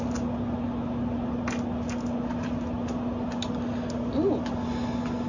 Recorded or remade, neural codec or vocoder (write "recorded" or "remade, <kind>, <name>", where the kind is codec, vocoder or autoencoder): recorded